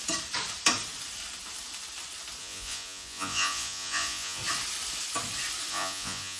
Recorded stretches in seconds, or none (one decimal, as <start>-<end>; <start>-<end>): 0.0-2.4; 4.4-5.7